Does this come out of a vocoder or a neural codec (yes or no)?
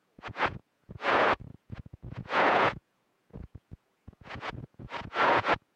yes